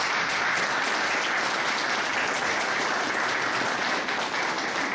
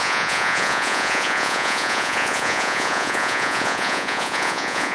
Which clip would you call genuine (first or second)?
first